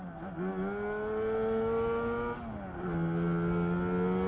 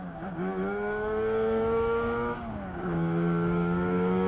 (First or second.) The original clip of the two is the first